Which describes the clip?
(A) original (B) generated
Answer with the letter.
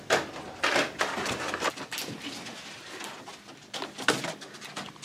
A